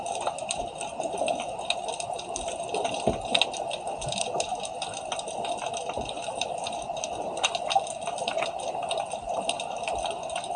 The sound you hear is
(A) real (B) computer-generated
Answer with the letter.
A